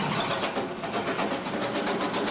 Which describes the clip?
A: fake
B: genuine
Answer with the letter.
B